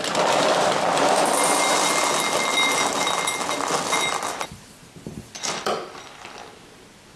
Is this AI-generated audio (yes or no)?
no